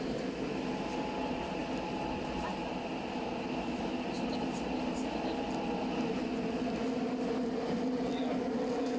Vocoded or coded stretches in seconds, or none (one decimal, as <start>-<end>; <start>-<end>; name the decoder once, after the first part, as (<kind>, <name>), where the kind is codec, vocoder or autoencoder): none